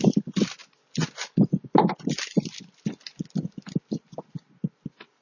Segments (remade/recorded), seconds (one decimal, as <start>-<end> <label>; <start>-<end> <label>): 0.0-5.2 recorded